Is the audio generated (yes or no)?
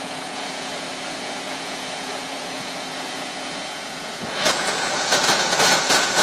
yes